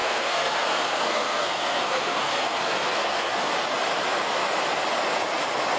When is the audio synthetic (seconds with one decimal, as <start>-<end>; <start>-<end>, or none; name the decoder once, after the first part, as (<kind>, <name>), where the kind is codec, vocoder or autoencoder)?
0.0-3.5 (codec, SNAC)